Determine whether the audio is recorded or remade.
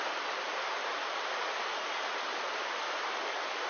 recorded